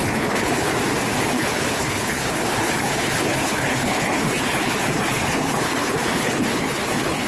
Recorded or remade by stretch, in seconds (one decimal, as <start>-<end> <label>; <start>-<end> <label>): 0.0-0.7 remade; 0.7-1.3 recorded; 1.3-7.3 remade